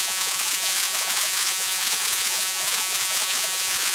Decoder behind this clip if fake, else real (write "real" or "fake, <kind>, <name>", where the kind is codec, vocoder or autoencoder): fake, vocoder, Vocos